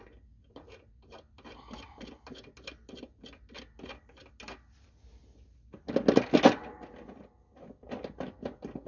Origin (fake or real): real